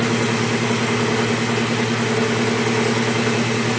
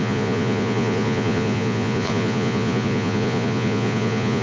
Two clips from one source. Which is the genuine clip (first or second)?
first